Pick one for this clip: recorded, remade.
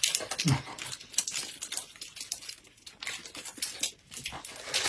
recorded